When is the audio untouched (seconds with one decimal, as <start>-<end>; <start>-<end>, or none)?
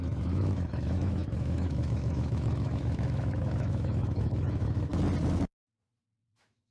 4.9-5.4